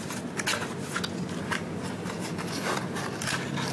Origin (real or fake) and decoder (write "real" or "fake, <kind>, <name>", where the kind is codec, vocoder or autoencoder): real